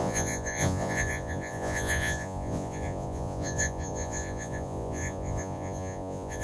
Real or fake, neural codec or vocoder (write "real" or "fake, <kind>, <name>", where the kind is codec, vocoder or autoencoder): fake, vocoder, Vocos